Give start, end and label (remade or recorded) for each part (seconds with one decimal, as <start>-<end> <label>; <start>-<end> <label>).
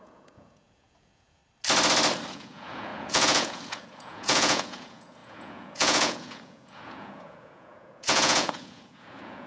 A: 0.0-1.4 remade; 1.4-2.3 recorded; 2.3-9.5 remade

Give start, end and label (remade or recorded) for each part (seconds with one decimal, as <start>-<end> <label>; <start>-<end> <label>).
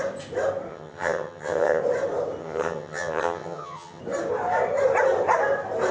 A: 0.0-0.7 recorded; 0.7-1.8 remade; 1.8-2.4 recorded; 2.4-4.0 remade; 4.0-5.9 recorded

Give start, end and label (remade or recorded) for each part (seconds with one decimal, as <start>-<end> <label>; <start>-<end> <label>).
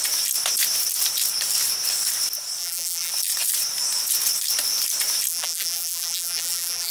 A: 0.0-2.6 recorded; 2.6-3.1 remade; 3.1-5.3 recorded; 5.3-6.9 remade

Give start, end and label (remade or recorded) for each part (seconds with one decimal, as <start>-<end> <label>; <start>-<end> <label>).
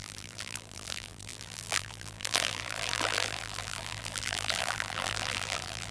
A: 0.0-5.9 remade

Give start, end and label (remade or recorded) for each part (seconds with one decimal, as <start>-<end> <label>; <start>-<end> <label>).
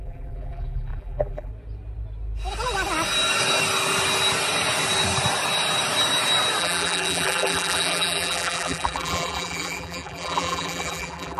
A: 0.0-1.5 remade; 1.5-6.6 recorded; 6.6-11.4 remade